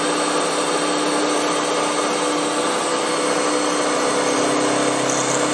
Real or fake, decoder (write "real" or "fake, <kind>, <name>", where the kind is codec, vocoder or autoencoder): real